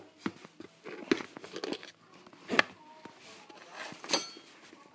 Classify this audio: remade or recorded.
recorded